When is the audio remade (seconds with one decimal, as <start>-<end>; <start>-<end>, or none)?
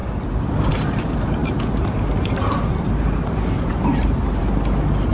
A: 0.0-4.4